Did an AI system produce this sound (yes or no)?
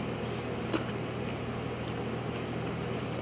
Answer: no